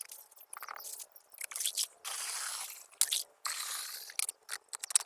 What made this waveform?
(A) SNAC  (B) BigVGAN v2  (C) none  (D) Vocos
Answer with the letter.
C